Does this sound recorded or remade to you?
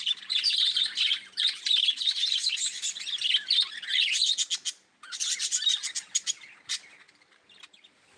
recorded